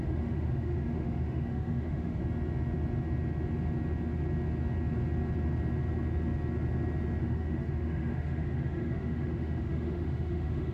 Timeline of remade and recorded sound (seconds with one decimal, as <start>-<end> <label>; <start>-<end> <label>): 0.0-2.2 remade; 2.2-7.2 recorded; 7.2-10.7 remade